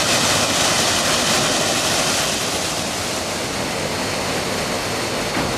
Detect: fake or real real